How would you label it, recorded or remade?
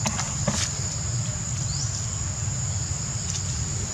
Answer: recorded